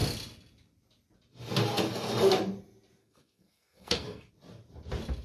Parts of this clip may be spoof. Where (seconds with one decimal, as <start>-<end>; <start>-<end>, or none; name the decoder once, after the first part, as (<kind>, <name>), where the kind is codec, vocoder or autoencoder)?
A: 3.0-4.3 (codec, SNAC)